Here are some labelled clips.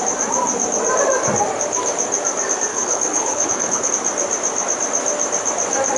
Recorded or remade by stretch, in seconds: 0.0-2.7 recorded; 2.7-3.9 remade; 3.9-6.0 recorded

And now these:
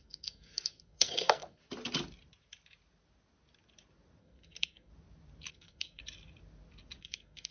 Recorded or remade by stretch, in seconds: 0.0-1.6 remade; 1.6-4.2 recorded; 4.2-4.9 remade; 4.9-5.5 recorded; 5.5-6.0 remade; 6.0-7.0 recorded; 7.0-7.5 remade

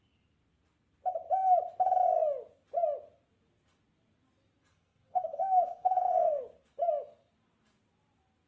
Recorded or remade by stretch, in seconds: 0.0-4.7 recorded; 4.7-6.4 remade; 6.4-8.5 recorded

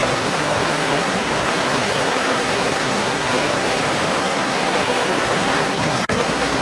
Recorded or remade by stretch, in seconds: 0.0-3.8 remade; 3.8-4.2 recorded; 4.2-6.6 remade